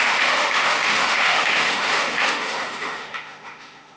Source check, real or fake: fake